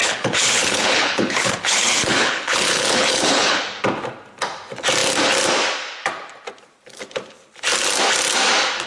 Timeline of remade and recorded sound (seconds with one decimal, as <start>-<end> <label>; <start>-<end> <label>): 0.0-3.6 remade; 3.6-8.9 recorded